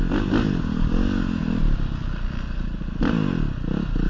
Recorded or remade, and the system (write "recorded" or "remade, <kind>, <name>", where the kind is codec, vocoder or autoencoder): recorded